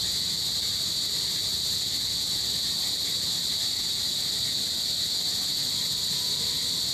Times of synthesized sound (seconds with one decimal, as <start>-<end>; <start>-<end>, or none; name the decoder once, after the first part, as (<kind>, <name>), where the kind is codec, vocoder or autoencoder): none